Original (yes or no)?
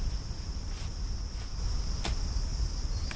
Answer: yes